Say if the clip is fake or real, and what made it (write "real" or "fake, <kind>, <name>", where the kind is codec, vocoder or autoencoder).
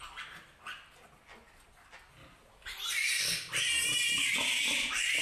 real